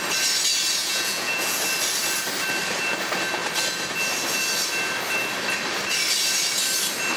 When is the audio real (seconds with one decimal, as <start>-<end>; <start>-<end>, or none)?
0.0-0.8; 1.6-7.2